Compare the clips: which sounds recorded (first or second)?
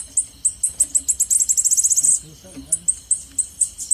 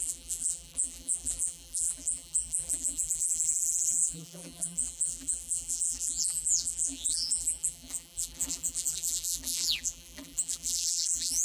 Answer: first